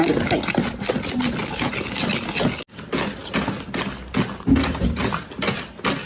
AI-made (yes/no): no